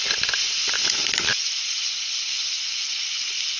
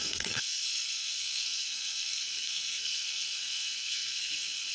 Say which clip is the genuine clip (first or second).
first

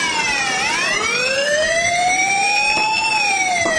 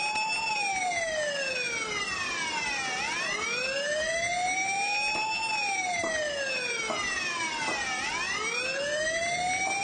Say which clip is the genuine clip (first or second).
second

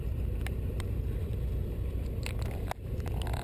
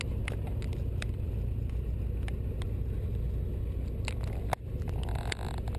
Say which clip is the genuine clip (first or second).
second